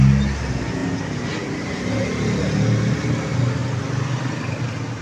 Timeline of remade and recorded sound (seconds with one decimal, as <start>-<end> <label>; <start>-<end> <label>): 0.0-5.0 recorded